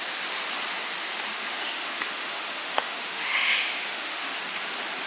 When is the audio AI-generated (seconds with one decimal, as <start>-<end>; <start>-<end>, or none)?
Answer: 1.3-4.4